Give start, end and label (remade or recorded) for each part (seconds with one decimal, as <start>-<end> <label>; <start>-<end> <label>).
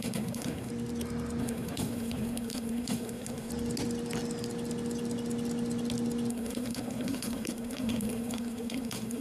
0.0-0.7 remade; 0.7-1.4 recorded; 1.4-3.5 remade; 3.5-6.3 recorded; 6.3-9.2 remade